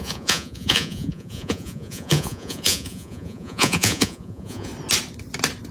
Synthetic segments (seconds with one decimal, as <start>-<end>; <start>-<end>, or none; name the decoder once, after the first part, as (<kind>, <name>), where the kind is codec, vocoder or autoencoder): 0.0-4.7 (vocoder, Vocos)